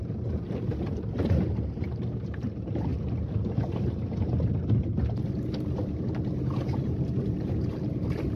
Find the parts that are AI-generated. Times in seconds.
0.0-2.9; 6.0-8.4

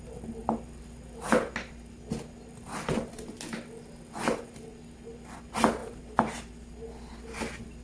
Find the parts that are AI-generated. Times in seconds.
5.8-6.5

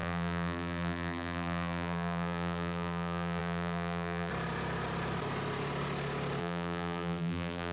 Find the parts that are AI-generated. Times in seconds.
0.0-4.3; 6.4-7.7